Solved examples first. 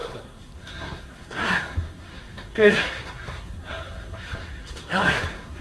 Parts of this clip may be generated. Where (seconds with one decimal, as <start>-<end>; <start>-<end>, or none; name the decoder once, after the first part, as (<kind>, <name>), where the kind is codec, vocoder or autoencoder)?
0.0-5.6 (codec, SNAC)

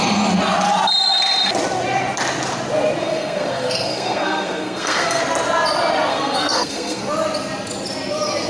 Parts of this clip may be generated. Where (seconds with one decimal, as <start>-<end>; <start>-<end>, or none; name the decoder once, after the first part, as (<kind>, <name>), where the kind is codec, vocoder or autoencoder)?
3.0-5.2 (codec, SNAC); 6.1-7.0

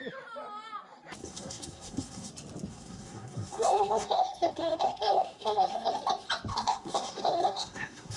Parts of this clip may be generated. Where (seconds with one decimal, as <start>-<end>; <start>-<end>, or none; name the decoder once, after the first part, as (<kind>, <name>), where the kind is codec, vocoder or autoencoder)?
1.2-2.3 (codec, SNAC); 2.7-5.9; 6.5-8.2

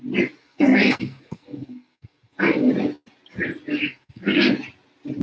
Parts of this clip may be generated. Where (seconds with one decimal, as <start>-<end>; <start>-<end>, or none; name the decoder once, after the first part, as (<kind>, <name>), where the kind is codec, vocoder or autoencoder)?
0.4-2.7 (codec, SNAC); 3.8-4.5